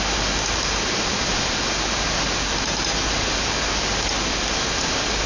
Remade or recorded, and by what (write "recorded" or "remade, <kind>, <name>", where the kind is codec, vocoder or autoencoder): recorded